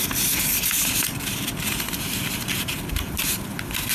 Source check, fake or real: fake